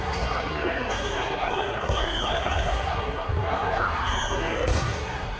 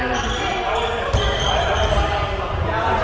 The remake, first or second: first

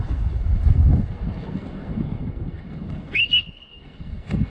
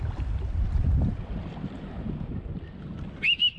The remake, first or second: first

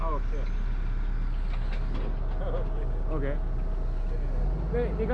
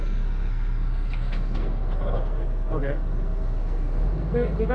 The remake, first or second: second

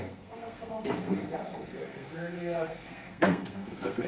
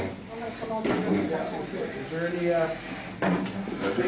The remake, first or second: first